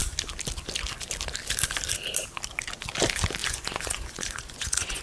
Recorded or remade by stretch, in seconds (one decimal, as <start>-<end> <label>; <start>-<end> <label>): 0.0-3.4 recorded; 3.4-5.0 remade